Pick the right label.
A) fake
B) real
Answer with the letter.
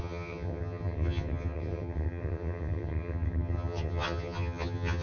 A